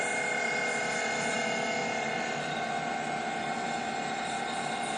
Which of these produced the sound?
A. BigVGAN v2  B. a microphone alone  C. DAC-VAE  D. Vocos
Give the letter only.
A